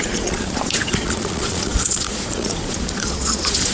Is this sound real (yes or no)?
no